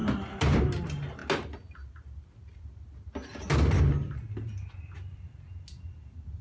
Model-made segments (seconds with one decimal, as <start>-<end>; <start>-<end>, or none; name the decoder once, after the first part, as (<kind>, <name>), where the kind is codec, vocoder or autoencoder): none